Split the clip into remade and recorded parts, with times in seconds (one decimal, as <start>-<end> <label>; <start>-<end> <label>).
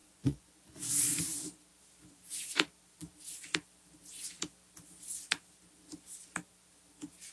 0.0-0.8 remade; 0.8-7.3 recorded